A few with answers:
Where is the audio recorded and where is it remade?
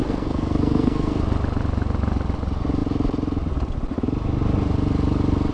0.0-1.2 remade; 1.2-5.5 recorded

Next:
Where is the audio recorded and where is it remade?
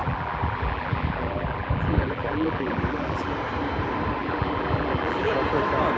0.0-3.3 remade; 3.3-4.2 recorded; 4.2-5.3 remade; 5.3-6.0 recorded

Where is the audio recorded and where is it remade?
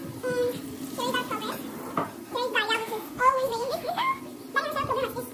0.0-2.8 recorded; 2.8-4.2 remade; 4.2-5.3 recorded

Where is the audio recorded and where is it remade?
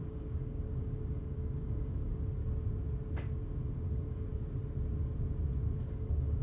0.0-2.4 remade; 2.4-3.3 recorded; 3.3-4.3 remade; 4.3-5.8 recorded; 5.8-6.4 remade